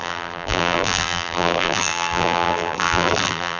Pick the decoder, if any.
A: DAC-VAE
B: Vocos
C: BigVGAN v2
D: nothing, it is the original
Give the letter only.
C